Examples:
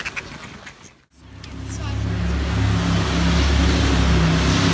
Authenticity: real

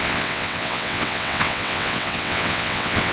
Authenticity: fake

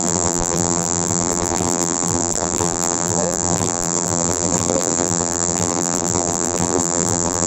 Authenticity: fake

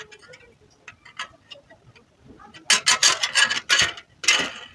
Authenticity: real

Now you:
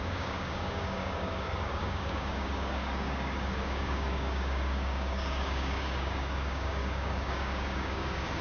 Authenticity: fake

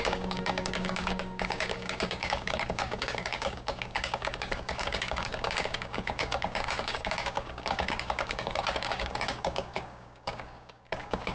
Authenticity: fake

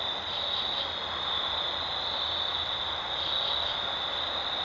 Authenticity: real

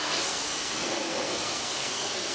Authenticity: fake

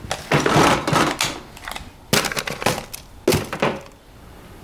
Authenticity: real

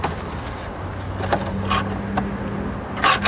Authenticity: real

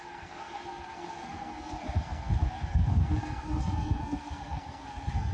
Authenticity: fake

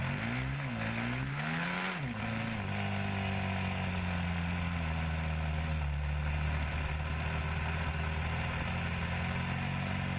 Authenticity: real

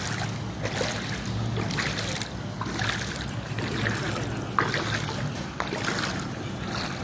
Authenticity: real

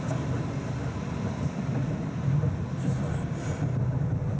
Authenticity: real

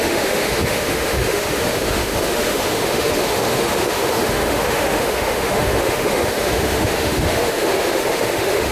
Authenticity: fake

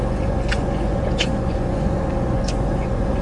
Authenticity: fake